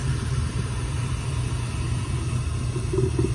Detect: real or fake real